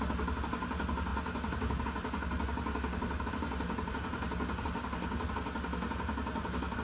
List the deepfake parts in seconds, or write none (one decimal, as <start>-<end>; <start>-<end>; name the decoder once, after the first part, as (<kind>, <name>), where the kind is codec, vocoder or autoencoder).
none